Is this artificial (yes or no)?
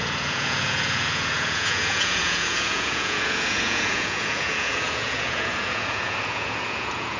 yes